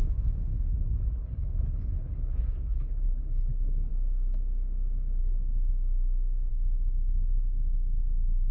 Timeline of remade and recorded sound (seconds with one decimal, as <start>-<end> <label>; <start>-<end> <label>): 0.0-3.9 remade; 3.9-5.2 recorded; 5.2-5.7 remade; 5.7-6.5 recorded; 6.5-8.5 remade

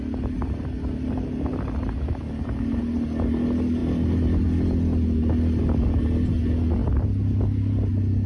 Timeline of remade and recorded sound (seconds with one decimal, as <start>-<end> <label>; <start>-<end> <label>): 0.0-8.3 recorded

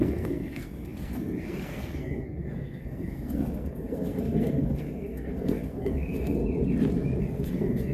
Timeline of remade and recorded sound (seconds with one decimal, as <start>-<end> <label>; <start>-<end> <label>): 0.0-6.4 remade; 6.4-7.2 recorded; 7.2-7.9 remade

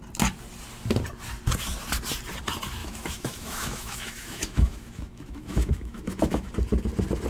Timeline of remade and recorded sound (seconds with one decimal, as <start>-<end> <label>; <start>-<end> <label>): 0.0-2.8 recorded; 2.8-6.5 remade; 6.5-7.3 recorded

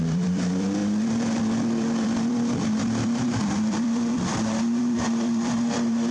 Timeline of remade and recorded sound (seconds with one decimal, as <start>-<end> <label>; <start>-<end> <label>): 0.0-6.1 remade

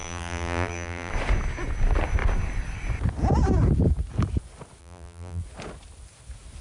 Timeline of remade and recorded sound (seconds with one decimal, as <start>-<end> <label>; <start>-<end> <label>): 0.0-1.1 remade; 1.1-4.8 recorded; 4.8-5.4 remade; 5.4-6.6 recorded

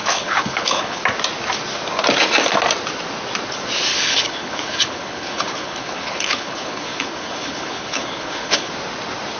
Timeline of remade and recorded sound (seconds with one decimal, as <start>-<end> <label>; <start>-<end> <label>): 0.0-1.0 remade; 1.0-3.9 recorded; 3.9-8.7 remade; 8.7-9.4 recorded